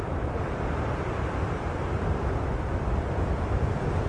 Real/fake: fake